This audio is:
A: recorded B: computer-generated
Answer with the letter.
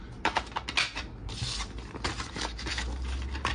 A